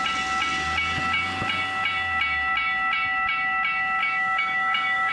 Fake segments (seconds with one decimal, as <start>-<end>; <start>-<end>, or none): 4.0-5.1